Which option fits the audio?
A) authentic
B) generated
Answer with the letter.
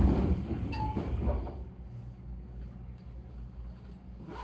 B